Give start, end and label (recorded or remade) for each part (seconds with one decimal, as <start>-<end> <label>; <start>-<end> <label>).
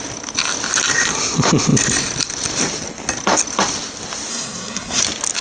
0.0-4.3 recorded; 4.3-5.0 remade; 5.0-5.4 recorded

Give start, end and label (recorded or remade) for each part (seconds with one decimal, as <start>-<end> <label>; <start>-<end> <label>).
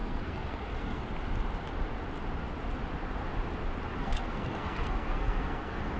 0.0-1.1 remade; 1.1-4.0 recorded; 4.0-6.0 remade